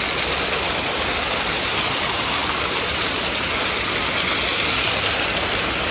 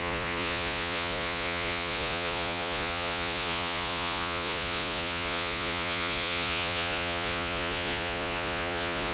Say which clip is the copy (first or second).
second